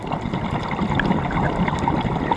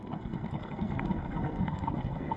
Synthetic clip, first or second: second